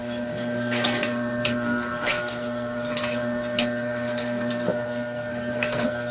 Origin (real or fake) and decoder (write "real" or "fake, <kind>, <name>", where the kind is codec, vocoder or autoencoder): fake, codec, SNAC